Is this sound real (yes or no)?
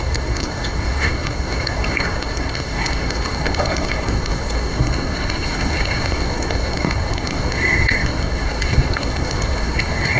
no